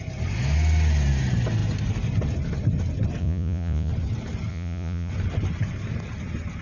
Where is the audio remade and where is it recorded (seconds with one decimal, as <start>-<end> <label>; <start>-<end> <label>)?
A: 0.0-3.2 recorded; 3.2-3.9 remade; 3.9-4.5 recorded; 4.5-5.1 remade; 5.1-6.6 recorded